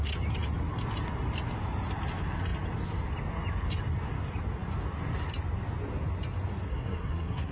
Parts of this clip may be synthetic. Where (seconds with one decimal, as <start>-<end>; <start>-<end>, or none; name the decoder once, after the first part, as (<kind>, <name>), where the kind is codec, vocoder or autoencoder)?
6.7-7.5 (codec, SNAC)